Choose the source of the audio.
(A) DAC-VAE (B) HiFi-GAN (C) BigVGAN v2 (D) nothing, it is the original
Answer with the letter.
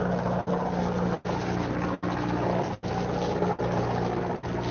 D